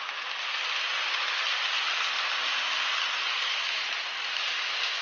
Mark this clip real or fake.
real